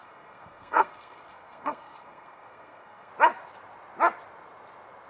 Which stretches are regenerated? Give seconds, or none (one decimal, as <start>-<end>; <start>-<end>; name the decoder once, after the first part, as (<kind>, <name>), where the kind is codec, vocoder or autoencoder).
0.0-3.1 (codec, SNAC)